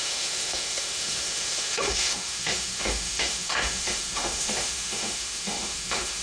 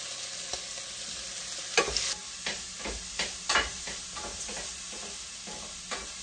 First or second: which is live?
second